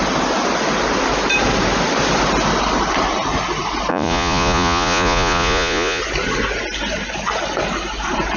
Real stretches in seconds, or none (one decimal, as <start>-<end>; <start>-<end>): 0.0-3.9; 6.0-8.4